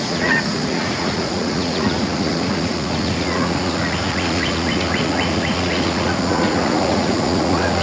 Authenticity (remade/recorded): remade